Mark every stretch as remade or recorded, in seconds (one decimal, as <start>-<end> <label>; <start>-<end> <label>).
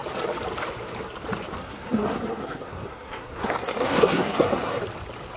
0.0-1.6 recorded; 1.6-4.8 remade; 4.8-5.4 recorded